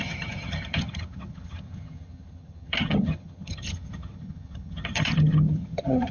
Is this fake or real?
fake